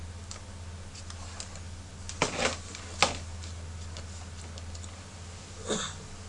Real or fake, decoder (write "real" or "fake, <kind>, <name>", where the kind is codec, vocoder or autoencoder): real